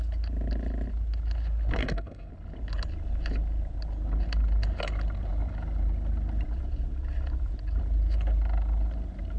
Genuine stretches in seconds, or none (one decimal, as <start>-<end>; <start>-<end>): 0.0-1.8; 2.3-9.4